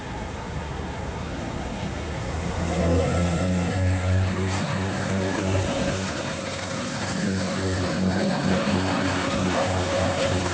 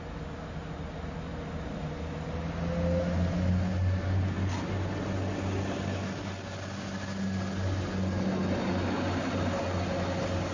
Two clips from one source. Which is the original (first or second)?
second